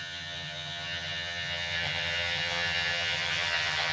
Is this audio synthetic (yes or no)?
yes